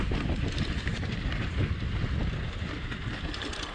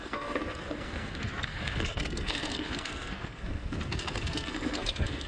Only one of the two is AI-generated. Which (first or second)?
second